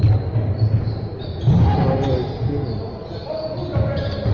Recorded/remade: recorded